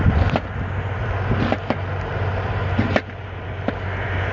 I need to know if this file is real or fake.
real